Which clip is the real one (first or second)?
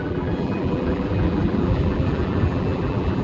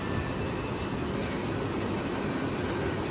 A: second